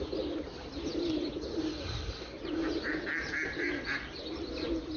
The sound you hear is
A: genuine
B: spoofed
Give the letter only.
A